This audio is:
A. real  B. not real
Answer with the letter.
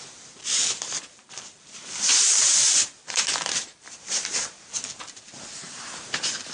B